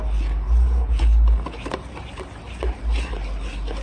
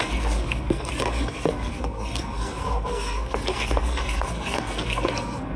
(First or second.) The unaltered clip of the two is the first